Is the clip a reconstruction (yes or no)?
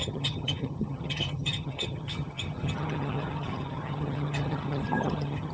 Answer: yes